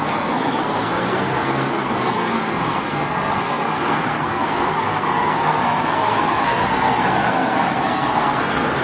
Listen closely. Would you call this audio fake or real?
fake